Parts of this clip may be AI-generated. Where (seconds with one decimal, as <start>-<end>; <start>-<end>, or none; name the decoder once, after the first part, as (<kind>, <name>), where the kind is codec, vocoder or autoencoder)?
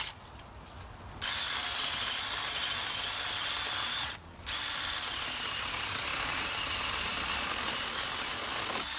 3.8-4.4 (vocoder, Vocos)